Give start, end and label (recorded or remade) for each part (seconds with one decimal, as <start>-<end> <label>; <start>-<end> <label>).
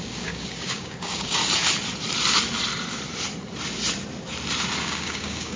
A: 0.0-1.4 remade; 1.4-4.8 recorded; 4.8-5.6 remade